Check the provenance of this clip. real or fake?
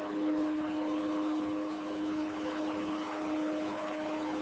fake